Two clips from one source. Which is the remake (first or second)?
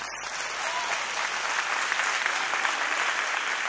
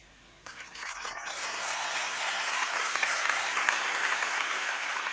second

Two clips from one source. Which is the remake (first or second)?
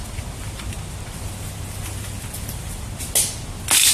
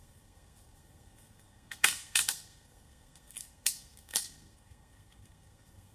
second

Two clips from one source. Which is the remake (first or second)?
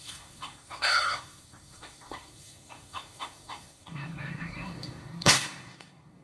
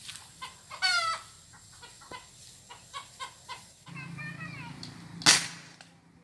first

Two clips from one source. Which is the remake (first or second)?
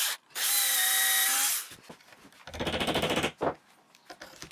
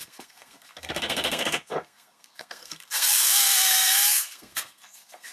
second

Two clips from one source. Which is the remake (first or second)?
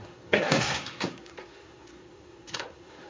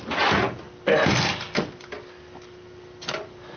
first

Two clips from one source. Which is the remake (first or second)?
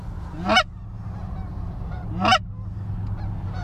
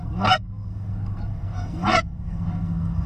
second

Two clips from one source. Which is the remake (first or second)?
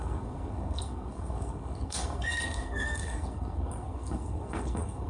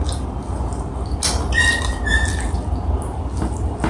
first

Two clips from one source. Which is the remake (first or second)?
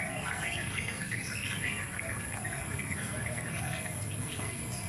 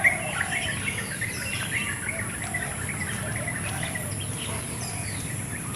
first